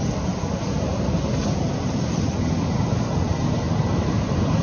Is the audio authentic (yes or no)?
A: yes